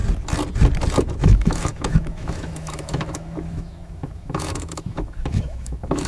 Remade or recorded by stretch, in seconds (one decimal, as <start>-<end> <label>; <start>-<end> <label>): 0.0-1.2 recorded; 1.2-6.1 remade